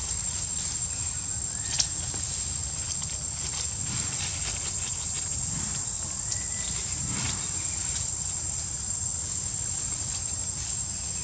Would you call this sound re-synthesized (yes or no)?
no